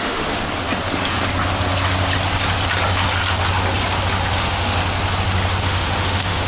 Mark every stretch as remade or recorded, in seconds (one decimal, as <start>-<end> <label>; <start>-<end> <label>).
0.0-0.4 remade; 0.4-4.3 recorded; 4.3-4.8 remade; 4.8-5.6 recorded; 5.6-6.5 remade